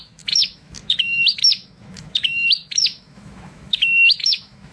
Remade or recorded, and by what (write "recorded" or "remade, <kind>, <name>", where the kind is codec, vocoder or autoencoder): remade, autoencoder, DAC-VAE